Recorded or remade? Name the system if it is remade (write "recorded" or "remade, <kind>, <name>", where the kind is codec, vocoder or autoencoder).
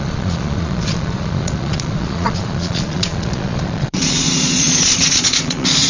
remade, vocoder, Vocos